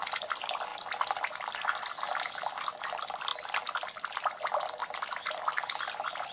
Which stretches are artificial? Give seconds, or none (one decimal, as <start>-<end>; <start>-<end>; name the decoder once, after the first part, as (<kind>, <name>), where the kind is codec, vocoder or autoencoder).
none